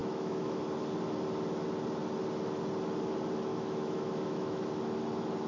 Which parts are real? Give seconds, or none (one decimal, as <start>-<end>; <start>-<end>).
0.6-3.5; 4.6-5.5